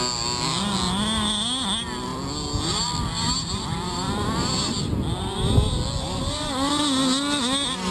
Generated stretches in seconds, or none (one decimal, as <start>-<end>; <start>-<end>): none